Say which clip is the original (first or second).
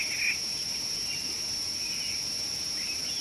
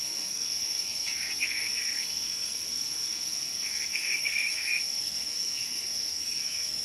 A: first